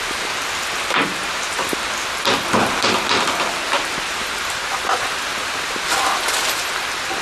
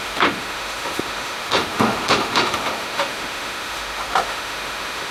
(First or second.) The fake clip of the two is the second